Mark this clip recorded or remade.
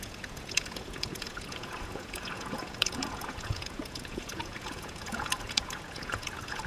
remade